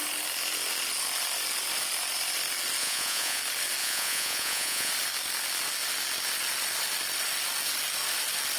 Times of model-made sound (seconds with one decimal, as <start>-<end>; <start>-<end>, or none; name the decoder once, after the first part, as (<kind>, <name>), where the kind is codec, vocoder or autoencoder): 2.8-3.4 (vocoder, Vocos); 3.8-4.9